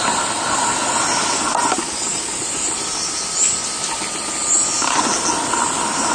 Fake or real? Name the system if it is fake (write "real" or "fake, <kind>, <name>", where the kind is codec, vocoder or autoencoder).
real